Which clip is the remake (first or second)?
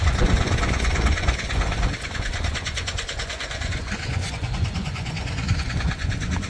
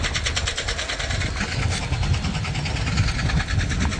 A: first